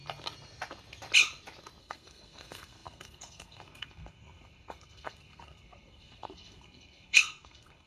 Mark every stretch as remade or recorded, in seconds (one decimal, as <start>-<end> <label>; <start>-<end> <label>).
0.0-1.8 recorded; 1.8-7.9 remade